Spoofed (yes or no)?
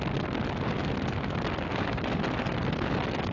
no